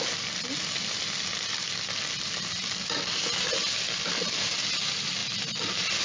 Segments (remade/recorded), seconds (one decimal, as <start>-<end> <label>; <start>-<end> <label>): 0.0-6.0 recorded

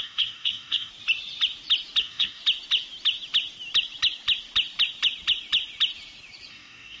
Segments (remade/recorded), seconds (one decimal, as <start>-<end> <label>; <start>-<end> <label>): 0.0-0.9 remade; 0.9-2.0 recorded; 2.0-2.4 remade; 2.4-6.5 recorded; 6.5-7.0 remade

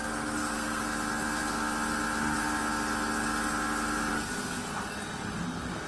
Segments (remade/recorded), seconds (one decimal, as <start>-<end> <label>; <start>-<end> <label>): 0.0-0.8 remade; 0.8-5.9 recorded

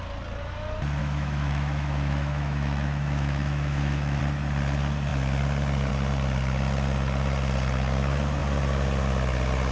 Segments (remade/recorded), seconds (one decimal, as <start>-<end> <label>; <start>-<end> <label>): 0.0-1.0 recorded; 1.0-4.2 remade; 4.2-9.7 recorded

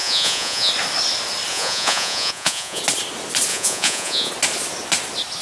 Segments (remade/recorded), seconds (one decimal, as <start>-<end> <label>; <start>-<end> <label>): 0.0-0.7 remade; 0.7-1.5 recorded; 1.5-2.8 remade; 2.8-3.5 recorded; 3.5-4.3 remade; 4.3-5.4 recorded

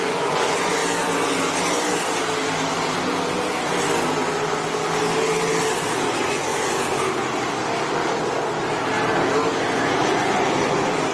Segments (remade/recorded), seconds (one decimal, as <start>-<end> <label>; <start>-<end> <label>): 0.0-0.8 remade; 0.8-6.0 recorded; 6.0-6.5 remade; 6.5-9.6 recorded; 9.6-11.1 remade

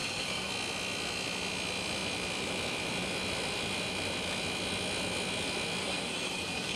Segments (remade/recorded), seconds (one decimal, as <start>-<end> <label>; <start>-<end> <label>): 0.0-0.5 remade; 0.5-5.8 recorded; 5.8-6.8 remade